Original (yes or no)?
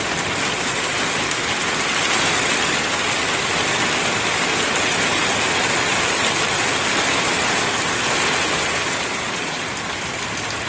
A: yes